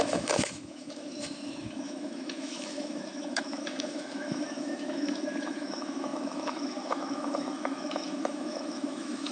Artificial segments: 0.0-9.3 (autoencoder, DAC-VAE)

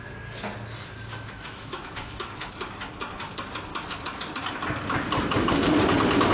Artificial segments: 1.1-2.5 (autoencoder, DAC-VAE)